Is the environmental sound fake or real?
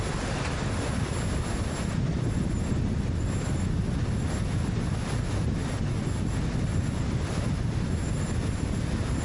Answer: real